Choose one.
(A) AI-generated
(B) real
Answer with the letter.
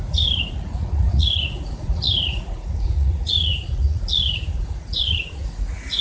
A